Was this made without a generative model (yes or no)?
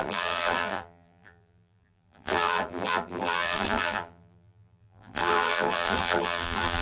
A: no